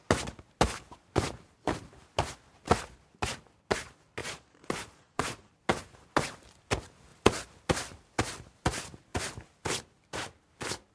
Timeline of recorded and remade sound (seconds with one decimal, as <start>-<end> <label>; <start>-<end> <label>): 0.0-4.2 recorded; 4.2-5.5 remade; 5.5-10.9 recorded